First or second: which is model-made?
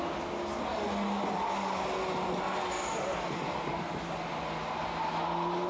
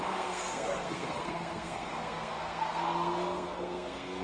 second